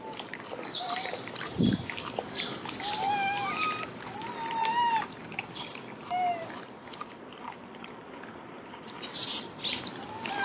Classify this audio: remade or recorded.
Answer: remade